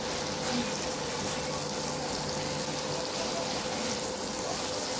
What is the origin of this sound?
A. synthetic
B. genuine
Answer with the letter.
B